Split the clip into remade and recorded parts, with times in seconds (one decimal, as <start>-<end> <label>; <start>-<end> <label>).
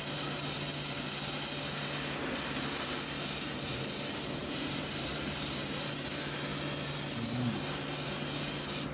0.0-4.4 recorded; 4.4-5.9 remade; 5.9-8.9 recorded